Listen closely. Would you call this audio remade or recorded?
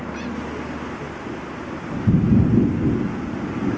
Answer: recorded